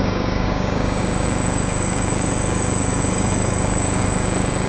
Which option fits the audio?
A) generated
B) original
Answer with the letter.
A